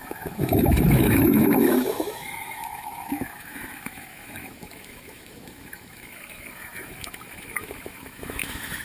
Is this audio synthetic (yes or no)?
yes